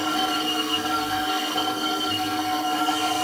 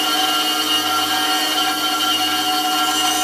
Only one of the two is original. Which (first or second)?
second